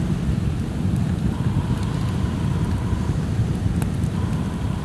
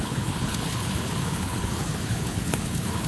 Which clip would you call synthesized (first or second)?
second